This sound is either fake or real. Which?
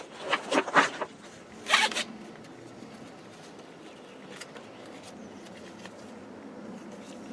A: real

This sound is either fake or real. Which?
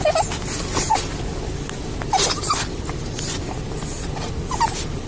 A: real